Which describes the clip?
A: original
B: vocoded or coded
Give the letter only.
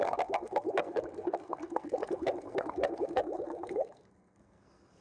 B